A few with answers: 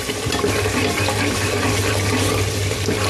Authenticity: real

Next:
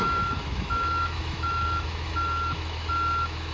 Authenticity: fake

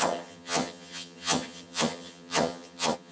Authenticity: fake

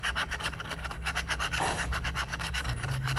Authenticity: fake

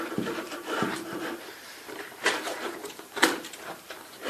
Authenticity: fake